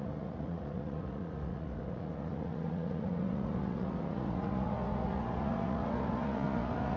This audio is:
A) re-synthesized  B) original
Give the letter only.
A